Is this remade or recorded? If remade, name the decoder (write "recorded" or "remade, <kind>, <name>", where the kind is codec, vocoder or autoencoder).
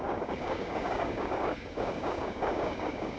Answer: remade, codec, DAC